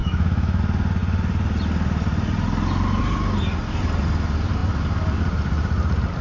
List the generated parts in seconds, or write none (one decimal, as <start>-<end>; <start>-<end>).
0.0-0.6